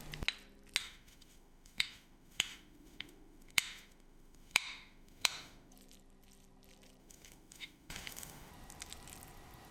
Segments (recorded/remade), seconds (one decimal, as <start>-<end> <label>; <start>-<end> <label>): 0.0-0.8 recorded; 0.8-5.7 remade; 5.7-7.0 recorded; 7.0-8.5 remade; 8.5-9.7 recorded